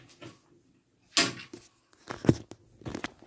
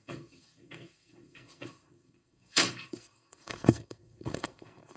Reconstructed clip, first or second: second